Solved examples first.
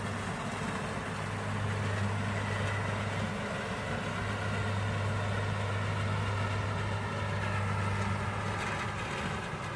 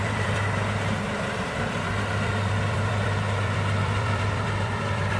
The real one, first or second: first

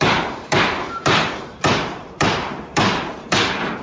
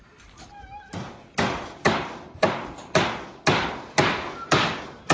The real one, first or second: second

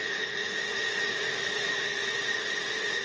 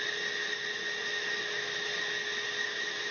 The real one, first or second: second